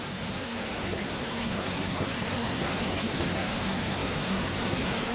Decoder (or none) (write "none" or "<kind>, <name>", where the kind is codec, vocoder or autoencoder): codec, SNAC